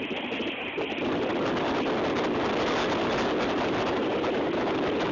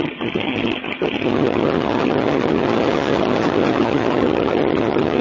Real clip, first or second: first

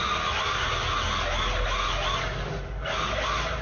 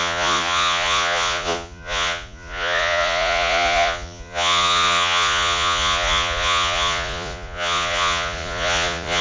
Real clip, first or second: first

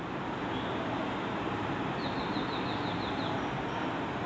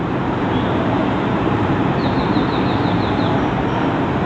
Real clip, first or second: first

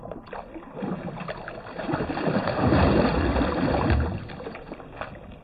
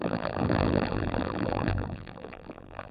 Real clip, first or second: first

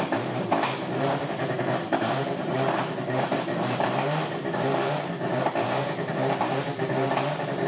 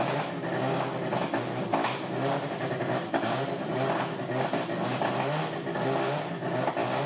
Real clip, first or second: second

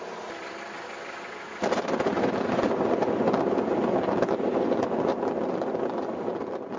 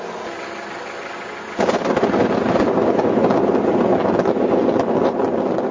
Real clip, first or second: second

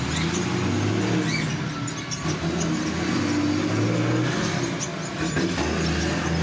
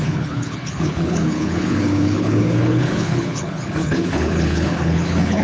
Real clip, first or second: first